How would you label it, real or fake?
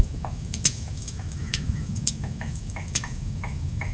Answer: fake